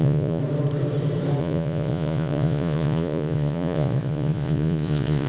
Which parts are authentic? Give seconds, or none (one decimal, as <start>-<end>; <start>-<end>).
0.4-1.4

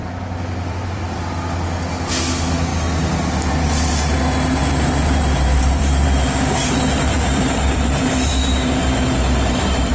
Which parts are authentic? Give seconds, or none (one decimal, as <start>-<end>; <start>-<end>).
1.2-4.6